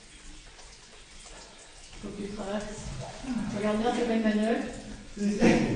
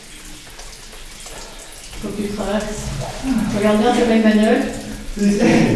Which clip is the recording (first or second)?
second